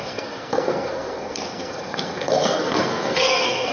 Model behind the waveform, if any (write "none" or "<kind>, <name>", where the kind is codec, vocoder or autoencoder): codec, SNAC